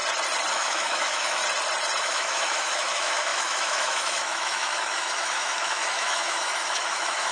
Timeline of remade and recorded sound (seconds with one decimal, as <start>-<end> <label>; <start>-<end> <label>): 0.0-0.5 recorded; 0.5-1.4 remade; 1.4-2.0 recorded; 2.0-7.3 remade